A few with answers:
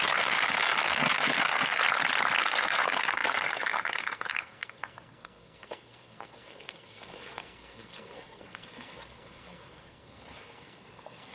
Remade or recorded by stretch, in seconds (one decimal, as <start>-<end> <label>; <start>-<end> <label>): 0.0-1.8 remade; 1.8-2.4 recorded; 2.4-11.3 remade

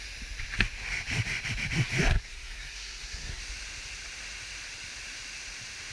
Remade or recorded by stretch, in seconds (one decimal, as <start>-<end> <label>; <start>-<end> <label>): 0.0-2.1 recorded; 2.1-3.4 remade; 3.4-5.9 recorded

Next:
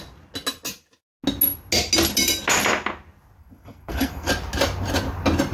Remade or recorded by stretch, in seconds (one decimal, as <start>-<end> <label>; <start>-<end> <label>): 0.0-3.4 recorded; 3.4-4.3 remade; 4.3-5.5 recorded

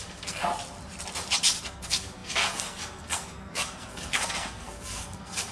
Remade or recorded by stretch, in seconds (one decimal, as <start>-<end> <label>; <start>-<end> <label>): 0.0-0.5 remade; 0.5-1.6 recorded; 1.6-5.5 remade

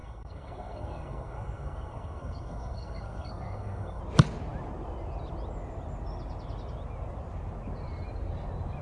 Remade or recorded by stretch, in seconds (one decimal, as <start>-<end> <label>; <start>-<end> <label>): 0.0-4.0 remade; 4.0-8.8 recorded

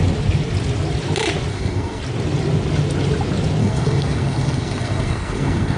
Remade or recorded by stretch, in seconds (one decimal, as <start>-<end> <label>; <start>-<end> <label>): 0.0-1.5 recorded; 1.5-2.0 remade; 2.0-3.6 recorded; 3.6-5.8 remade

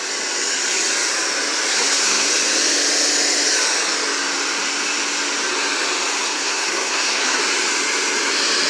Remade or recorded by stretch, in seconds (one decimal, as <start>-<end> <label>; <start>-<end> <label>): 0.0-1.7 recorded; 1.7-2.3 remade; 2.3-6.2 recorded; 6.2-7.4 remade; 7.4-8.7 recorded

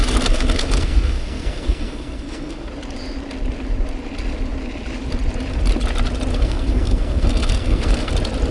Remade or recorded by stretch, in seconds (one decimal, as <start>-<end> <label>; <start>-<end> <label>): 0.0-2.7 remade; 2.7-6.3 recorded; 6.3-8.1 remade; 8.1-8.5 recorded